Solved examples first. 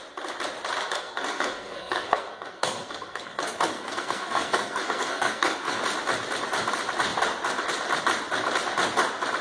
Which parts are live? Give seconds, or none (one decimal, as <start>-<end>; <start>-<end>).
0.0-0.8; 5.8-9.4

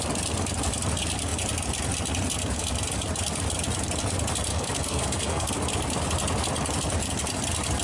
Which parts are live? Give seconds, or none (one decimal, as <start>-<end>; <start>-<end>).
0.0-4.5; 5.5-7.8

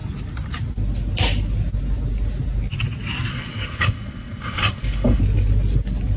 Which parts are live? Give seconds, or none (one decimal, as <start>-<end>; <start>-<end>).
0.0-3.3; 5.2-6.2

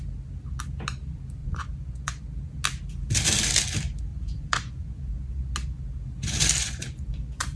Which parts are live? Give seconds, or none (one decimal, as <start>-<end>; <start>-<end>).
0.0-1.4; 2.2-4.1; 5.0-6.6